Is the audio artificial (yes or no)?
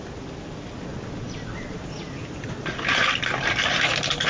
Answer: no